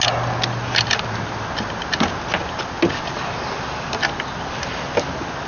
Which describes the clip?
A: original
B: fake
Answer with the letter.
A